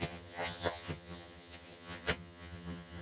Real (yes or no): no